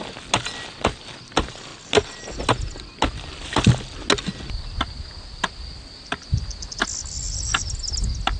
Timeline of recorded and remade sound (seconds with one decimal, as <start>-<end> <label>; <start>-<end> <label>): 0.0-8.4 recorded